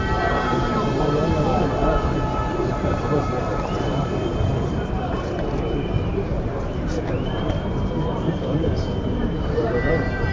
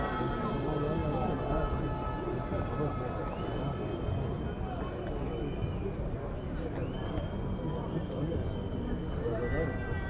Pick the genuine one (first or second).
second